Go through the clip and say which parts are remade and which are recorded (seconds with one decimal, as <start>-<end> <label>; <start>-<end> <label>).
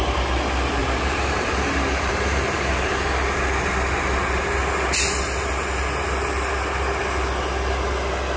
0.0-0.8 recorded; 0.8-2.7 remade; 2.7-8.4 recorded